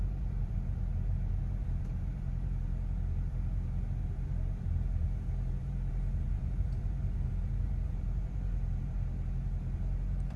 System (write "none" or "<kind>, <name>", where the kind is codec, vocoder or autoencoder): vocoder, BigVGAN v2